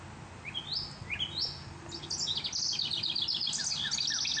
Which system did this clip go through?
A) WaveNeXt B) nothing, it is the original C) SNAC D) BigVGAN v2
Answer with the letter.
B